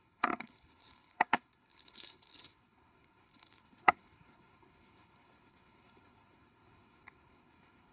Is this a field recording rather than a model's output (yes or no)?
no